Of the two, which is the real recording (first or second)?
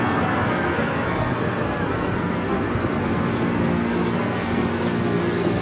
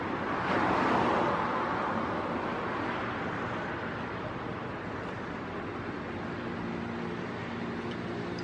second